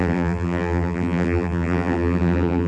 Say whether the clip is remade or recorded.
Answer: remade